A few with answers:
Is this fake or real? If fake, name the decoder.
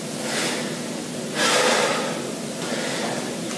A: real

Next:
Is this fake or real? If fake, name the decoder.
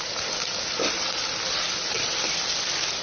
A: real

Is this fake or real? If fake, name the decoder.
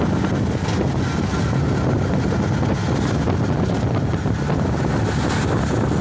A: real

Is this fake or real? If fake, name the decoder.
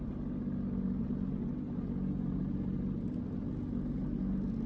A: real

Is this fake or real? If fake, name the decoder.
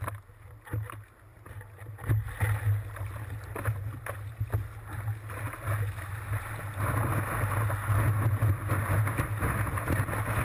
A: real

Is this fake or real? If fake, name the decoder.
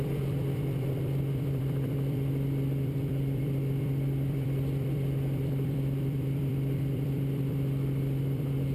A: fake, vocoder, BigVGAN v2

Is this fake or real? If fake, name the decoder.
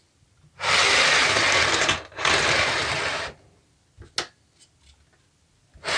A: real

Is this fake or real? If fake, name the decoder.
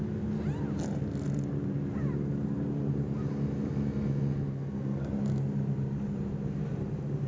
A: real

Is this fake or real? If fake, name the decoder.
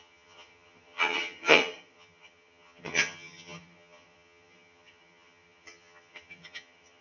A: fake, vocoder, HiFi-GAN